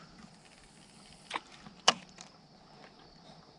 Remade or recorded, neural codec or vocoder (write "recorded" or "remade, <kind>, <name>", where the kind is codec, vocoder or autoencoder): recorded